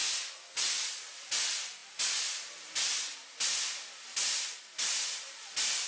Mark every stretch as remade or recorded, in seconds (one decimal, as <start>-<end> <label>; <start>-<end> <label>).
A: 0.0-5.9 recorded